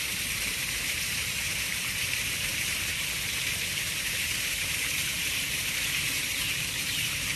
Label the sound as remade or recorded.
remade